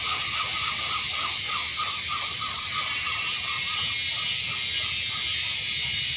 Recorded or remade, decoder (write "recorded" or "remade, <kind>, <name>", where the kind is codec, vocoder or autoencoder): recorded